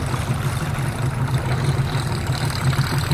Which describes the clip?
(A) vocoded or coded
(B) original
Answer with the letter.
B